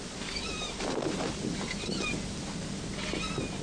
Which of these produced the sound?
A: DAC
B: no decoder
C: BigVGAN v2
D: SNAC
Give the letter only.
B